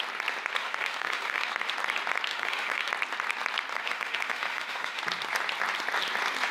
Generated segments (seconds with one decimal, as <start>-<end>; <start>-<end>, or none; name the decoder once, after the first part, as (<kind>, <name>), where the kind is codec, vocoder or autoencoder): 0.6-1.5 (autoencoder, DAC-VAE); 2.3-2.9; 3.7-5.0

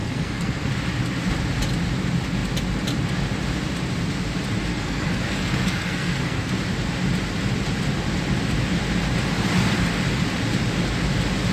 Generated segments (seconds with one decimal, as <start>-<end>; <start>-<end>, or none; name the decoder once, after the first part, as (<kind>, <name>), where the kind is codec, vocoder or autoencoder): 0.0-0.7 (codec, SNAC); 4.7-6.5

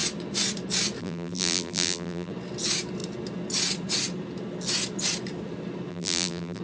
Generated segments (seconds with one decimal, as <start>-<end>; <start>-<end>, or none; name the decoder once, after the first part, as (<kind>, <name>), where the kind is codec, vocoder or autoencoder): 1.0-2.3 (vocoder, BigVGAN v2); 5.9-6.6

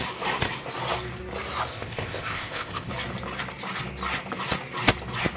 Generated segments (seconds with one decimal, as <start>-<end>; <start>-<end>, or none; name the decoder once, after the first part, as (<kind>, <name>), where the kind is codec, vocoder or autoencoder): 1.7-2.9 (codec, ZipCodec)